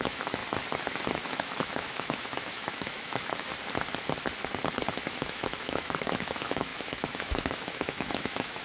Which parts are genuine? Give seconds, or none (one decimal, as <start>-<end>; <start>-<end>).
0.4-1.1; 3.5-4.9